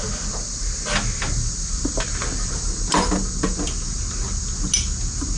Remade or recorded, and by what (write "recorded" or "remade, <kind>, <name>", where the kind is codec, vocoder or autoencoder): recorded